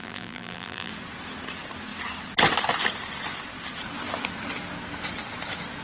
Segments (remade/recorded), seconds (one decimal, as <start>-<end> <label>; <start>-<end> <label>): 0.0-0.9 remade; 0.9-5.8 recorded